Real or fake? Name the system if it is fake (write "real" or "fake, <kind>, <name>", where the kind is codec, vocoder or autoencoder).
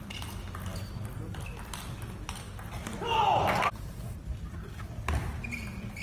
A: real